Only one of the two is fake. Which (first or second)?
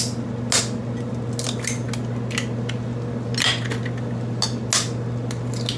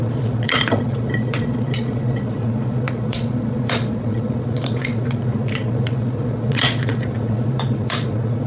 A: second